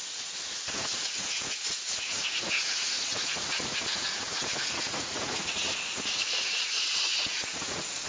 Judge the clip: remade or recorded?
remade